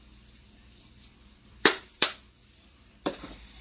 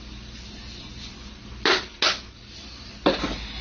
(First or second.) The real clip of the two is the second